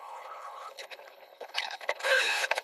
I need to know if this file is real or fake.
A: fake